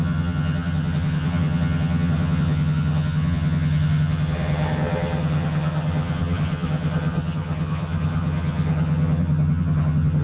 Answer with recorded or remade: remade